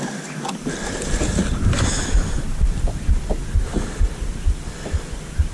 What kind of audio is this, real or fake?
real